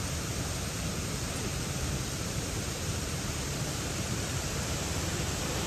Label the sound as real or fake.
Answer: fake